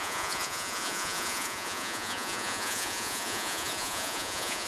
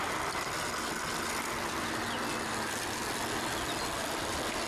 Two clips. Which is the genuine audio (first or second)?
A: second